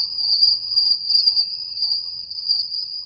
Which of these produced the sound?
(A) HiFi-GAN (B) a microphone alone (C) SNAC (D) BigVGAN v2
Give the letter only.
A